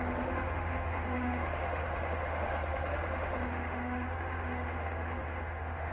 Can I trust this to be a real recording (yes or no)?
no